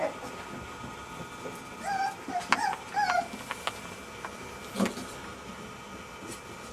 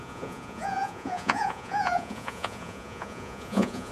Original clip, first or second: first